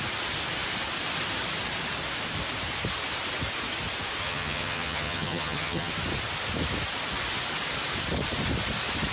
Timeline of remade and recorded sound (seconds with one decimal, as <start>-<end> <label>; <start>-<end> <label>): 0.0-4.2 recorded; 4.2-5.9 remade; 5.9-9.1 recorded